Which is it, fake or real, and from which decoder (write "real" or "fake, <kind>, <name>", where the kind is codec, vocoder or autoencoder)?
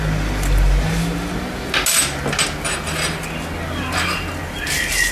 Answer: real